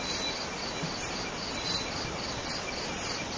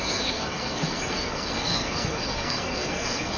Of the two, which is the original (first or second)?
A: first